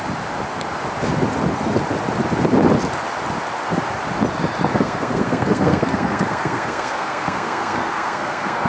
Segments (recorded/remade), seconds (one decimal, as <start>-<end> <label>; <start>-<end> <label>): 0.0-4.7 recorded; 4.7-8.7 remade

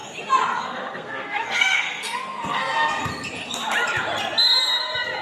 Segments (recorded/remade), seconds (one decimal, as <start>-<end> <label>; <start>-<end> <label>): 0.0-0.6 recorded; 0.6-3.1 remade; 3.1-5.2 recorded

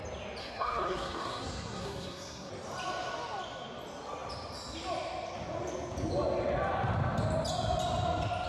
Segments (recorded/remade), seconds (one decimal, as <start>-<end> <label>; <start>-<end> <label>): 0.0-0.4 recorded; 0.4-2.5 remade; 2.5-8.5 recorded

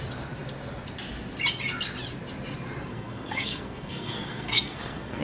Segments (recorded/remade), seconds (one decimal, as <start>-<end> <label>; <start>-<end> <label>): 0.0-2.9 recorded; 2.9-5.2 remade